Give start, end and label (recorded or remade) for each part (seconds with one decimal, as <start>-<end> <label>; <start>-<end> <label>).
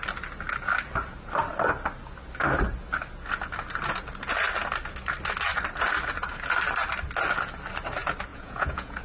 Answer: 0.0-8.3 recorded; 8.3-9.0 remade